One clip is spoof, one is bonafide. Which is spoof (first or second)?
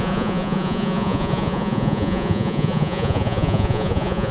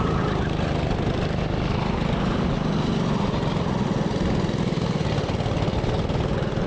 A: first